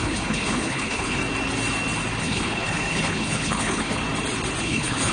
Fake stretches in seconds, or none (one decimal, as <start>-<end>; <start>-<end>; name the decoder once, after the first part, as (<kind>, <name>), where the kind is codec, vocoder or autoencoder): 0.0-1.2 (codec, HILCodec); 2.2-4.0; 4.6-5.1